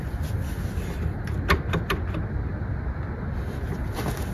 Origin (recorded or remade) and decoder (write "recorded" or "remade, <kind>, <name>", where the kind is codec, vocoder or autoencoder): recorded